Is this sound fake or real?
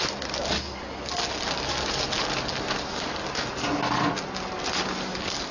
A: real